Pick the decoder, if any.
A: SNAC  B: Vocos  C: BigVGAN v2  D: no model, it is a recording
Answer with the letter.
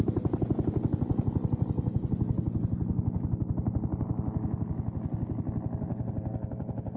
D